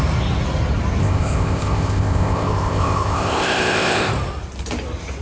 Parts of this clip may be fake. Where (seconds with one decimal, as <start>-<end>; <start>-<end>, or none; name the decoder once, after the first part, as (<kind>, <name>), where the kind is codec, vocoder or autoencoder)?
1.0-4.1 (codec, ZipCodec)